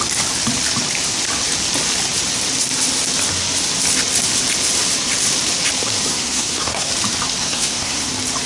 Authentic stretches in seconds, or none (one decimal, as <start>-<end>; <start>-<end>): 0.0-6.1; 6.9-7.4; 8.1-8.5